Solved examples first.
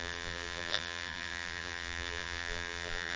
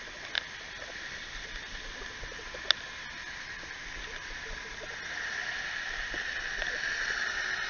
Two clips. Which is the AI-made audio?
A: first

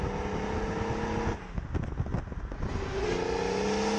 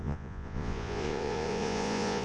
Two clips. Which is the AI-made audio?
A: second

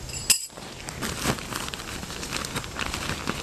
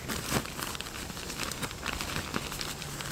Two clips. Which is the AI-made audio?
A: second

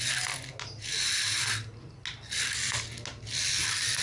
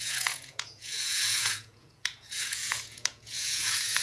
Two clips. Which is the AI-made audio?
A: second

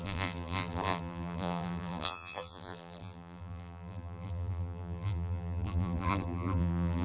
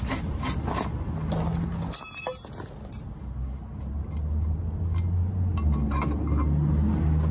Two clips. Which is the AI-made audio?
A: first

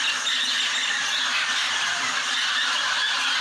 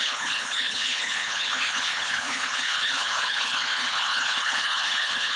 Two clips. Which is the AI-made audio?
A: second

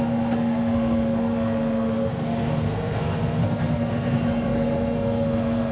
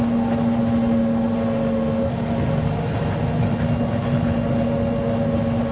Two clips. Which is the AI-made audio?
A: first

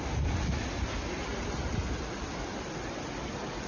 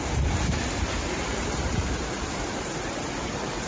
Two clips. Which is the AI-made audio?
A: second